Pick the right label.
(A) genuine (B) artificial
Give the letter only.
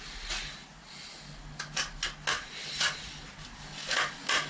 A